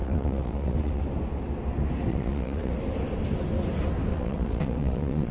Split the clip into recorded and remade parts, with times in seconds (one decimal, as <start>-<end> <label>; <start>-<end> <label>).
0.0-1.0 remade; 1.0-2.1 recorded; 2.1-2.7 remade; 2.7-4.1 recorded; 4.1-5.3 remade